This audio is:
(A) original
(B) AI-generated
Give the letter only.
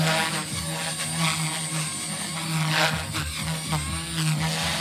A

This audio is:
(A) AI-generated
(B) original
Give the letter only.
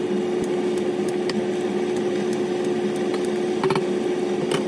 B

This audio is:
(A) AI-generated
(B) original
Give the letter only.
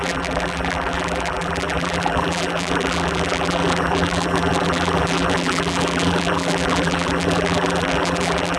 A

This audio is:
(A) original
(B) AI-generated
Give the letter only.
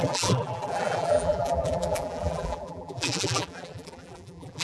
B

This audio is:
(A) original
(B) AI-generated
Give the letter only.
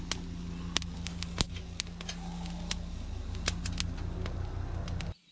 A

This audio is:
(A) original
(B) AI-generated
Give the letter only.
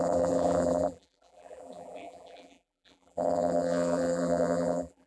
B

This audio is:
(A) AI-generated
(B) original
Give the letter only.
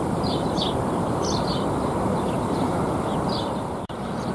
A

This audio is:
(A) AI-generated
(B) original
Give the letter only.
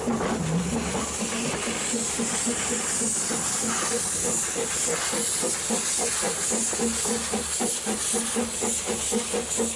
B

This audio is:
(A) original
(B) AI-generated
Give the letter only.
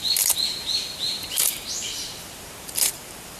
B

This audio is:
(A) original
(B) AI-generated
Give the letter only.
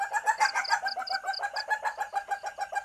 A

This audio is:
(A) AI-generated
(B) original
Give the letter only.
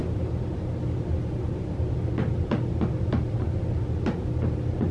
A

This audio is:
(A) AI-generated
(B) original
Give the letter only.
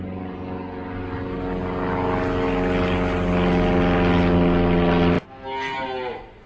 B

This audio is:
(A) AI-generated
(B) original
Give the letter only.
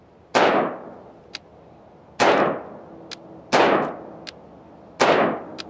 B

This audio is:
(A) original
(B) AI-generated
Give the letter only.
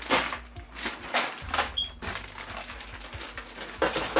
A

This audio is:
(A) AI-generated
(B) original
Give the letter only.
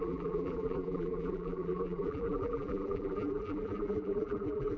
A